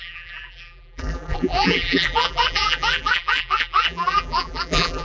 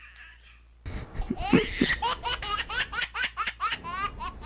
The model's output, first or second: first